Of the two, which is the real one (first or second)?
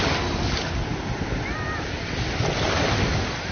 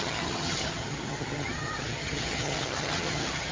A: first